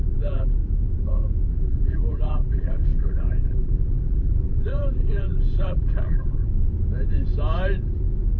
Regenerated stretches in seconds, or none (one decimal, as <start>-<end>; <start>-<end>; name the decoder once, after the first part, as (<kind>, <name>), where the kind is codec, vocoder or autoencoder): 0.0-0.6 (vocoder, BigVGAN v2); 1.5-6.5